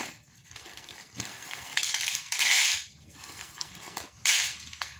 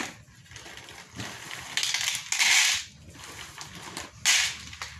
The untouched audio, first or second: second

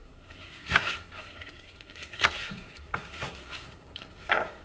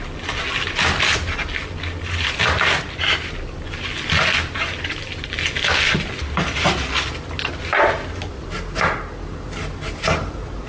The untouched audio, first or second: second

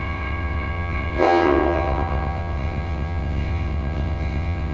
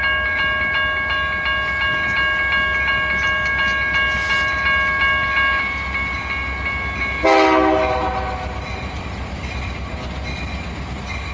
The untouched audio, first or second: second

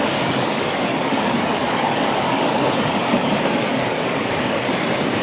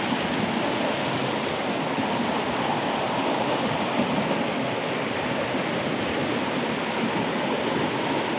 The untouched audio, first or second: second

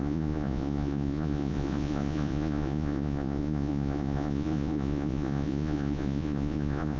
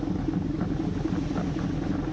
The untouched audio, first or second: second